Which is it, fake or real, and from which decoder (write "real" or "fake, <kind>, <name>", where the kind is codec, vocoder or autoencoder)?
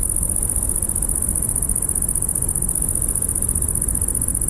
real